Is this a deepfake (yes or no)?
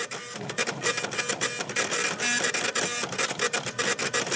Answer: no